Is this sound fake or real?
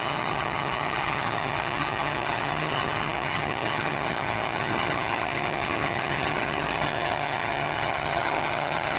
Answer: fake